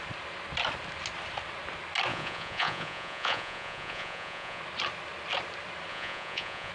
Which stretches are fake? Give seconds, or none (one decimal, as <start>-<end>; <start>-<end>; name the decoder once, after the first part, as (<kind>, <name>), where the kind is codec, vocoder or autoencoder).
2.1-4.6 (vocoder, Vocos); 5.9-6.7